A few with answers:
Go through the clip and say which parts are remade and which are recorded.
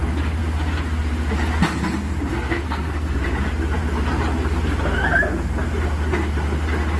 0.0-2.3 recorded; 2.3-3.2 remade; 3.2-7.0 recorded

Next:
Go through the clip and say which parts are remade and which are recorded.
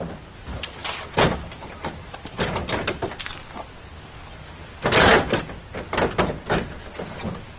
0.0-7.6 recorded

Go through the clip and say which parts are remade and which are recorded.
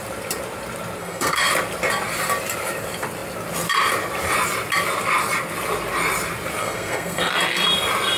0.0-1.0 recorded; 1.0-1.5 remade; 1.5-6.6 recorded; 6.6-7.3 remade; 7.3-8.2 recorded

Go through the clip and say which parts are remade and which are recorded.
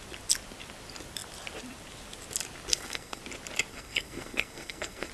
0.0-2.7 recorded; 2.7-3.2 remade; 3.2-3.7 recorded; 3.7-5.1 remade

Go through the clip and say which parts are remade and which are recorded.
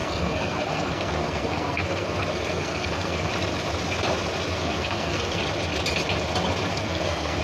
0.0-3.3 remade; 3.3-4.5 recorded; 4.5-5.4 remade; 5.4-6.7 recorded; 6.7-7.4 remade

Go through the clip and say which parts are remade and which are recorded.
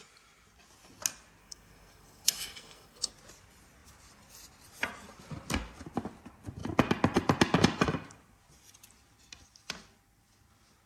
0.0-1.4 recorded; 1.4-3.1 remade; 3.1-10.9 recorded